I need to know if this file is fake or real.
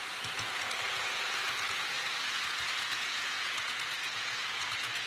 fake